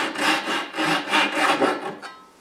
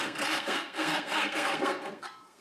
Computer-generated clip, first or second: second